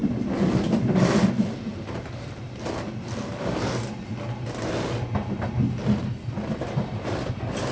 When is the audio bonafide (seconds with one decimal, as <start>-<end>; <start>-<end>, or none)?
0.0-7.7